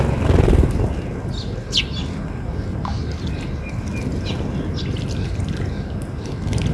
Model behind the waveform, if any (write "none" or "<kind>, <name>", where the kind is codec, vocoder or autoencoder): none